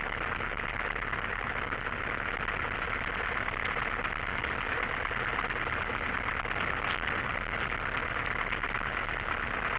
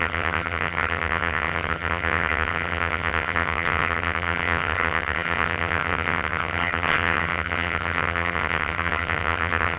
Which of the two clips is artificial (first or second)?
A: second